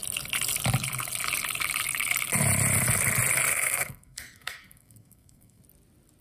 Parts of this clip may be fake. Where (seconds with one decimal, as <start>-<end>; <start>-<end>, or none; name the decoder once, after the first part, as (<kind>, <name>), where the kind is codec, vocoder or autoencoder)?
3.5-5.6 (codec, SNAC)